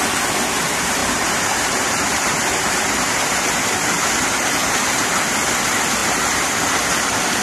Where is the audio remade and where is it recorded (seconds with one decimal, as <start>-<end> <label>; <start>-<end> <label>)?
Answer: 0.0-1.0 recorded; 1.0-3.4 remade; 3.4-4.6 recorded; 4.6-5.1 remade; 5.1-6.0 recorded; 6.0-6.5 remade; 6.5-7.4 recorded